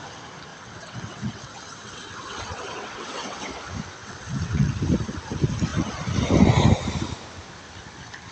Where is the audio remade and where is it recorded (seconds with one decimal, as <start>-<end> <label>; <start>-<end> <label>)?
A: 0.0-0.5 recorded; 0.5-3.5 remade; 3.5-4.0 recorded; 4.0-4.8 remade; 4.8-8.3 recorded